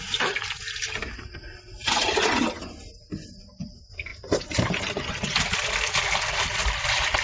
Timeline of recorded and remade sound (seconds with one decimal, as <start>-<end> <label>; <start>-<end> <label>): 0.0-7.2 recorded